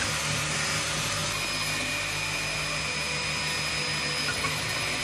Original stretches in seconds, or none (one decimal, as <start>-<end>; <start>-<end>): 0.0-5.0